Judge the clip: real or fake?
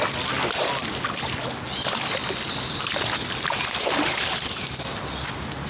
real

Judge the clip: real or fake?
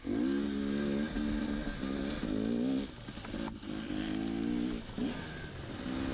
real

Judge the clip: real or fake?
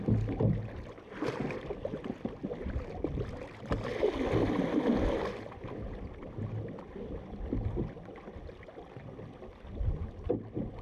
real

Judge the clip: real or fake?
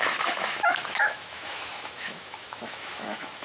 fake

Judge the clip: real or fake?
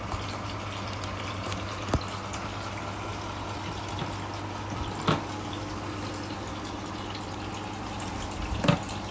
real